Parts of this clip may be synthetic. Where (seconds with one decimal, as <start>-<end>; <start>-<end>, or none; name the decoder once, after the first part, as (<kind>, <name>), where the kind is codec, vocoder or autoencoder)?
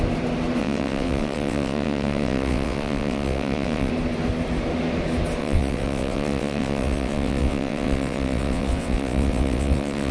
0.6-3.9 (vocoder, WaveNeXt); 5.4-10.1